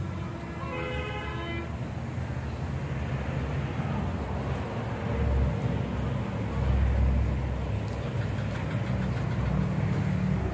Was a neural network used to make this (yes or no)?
no